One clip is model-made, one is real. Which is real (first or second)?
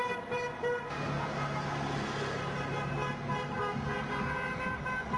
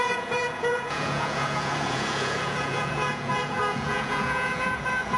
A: first